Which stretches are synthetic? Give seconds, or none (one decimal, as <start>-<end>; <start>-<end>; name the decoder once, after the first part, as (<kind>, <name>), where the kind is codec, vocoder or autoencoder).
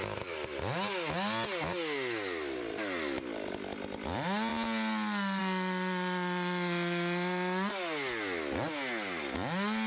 none